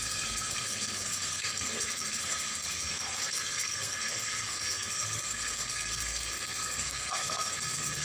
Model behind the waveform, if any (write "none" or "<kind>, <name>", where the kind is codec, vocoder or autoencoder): codec, SNAC